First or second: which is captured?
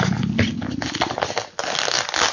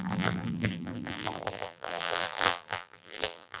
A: first